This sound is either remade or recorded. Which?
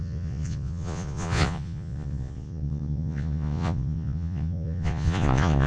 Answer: remade